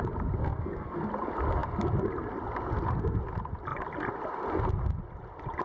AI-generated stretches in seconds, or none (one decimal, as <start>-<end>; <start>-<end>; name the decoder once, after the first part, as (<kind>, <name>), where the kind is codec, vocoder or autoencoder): 0.4-1.1 (codec, SNAC)